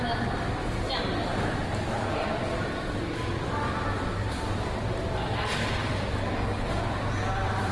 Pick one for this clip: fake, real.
fake